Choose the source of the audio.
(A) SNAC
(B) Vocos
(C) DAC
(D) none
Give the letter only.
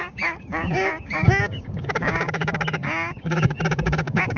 C